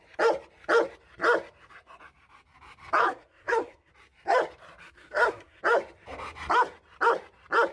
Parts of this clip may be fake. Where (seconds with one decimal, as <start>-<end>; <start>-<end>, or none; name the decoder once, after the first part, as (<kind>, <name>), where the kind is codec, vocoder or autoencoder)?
3.0-3.9 (codec, SNAC); 4.8-5.6